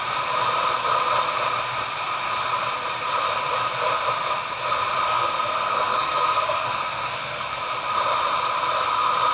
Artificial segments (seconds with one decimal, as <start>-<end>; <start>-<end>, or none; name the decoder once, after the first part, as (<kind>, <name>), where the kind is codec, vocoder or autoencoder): 5.1-7.6 (codec, SNAC)